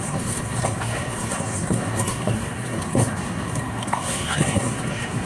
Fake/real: fake